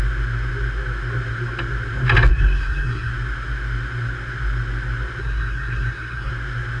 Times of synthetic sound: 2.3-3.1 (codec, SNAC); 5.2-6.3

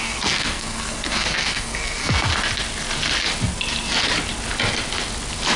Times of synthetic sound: 0.0-2.3 (codec, SNAC)

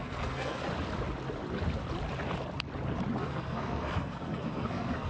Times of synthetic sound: 0.0-0.6 (codec, SNAC); 3.2-5.1

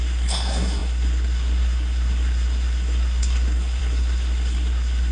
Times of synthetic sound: 0.0-5.1 (codec, SNAC)

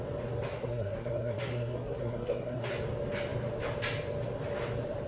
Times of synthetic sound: 0.5-2.7 (codec, SNAC)

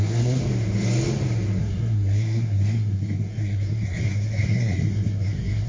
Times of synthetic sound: 0.0-0.4 (codec, SNAC); 1.6-5.7